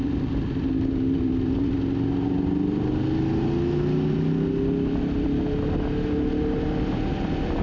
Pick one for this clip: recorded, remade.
recorded